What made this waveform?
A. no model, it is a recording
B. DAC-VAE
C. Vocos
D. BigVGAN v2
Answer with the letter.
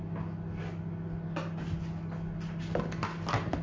A